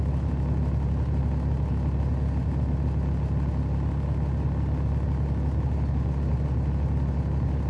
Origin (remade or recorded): recorded